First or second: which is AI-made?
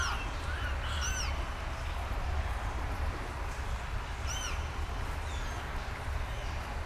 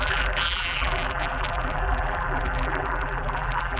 second